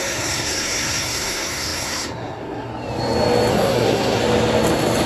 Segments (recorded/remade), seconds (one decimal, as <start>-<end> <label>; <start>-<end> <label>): 0.0-2.7 remade; 2.7-3.5 recorded; 3.5-4.2 remade; 4.2-5.1 recorded